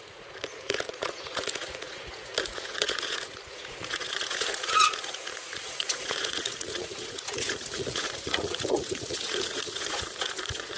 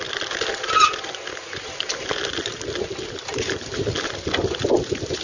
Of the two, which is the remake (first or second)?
first